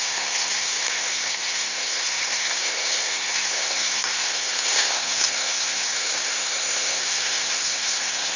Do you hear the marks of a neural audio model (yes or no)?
yes